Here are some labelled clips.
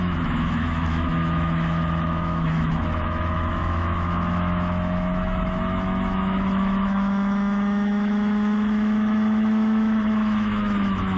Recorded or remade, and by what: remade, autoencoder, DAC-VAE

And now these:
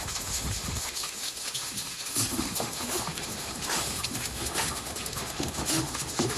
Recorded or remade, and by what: remade, autoencoder, DAC-VAE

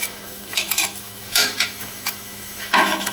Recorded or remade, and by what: remade, autoencoder, DAC-VAE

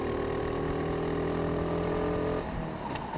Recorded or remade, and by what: recorded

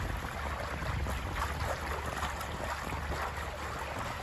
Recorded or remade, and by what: recorded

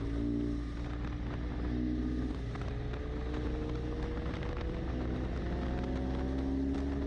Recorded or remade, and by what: recorded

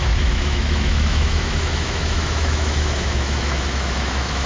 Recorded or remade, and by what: remade, autoencoder, DAC-VAE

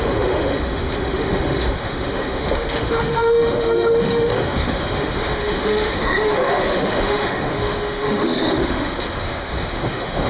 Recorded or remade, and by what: remade, autoencoder, DAC-VAE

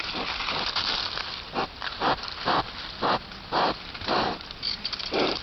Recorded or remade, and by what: recorded